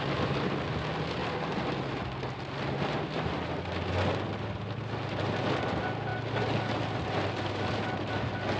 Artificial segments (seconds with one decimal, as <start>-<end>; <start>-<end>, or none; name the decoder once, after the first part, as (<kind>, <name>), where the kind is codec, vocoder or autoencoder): none